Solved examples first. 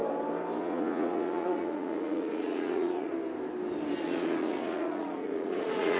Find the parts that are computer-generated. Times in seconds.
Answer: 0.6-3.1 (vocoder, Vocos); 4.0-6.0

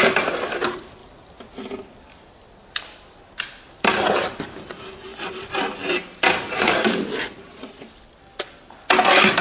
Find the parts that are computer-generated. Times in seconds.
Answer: none

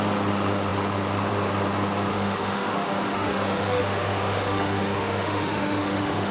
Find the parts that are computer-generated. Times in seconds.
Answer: 2.1-6.3 (autoencoder, DAC-VAE)

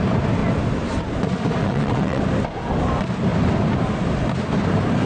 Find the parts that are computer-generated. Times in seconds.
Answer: 1.6-2.2 (vocoder, WaveNeXt)

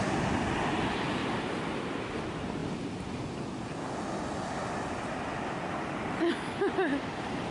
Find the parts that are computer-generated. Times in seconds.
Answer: 1.2-2.0 (vocoder, BigVGAN v2)

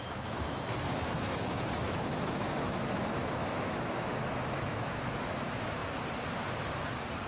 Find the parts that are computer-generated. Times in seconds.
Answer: 0.0-5.8 (autoencoder, DAC-VAE)